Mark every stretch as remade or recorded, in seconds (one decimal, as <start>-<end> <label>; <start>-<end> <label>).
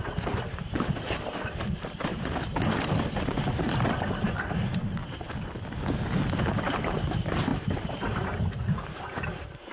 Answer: 0.0-5.0 remade; 5.0-6.3 recorded; 6.3-9.7 remade